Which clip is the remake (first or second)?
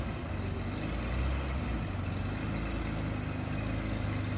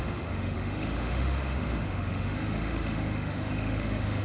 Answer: second